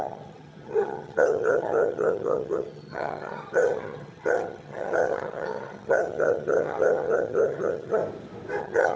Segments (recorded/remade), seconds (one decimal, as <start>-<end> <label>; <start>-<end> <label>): 0.0-8.0 remade; 8.0-8.6 recorded; 8.6-9.0 remade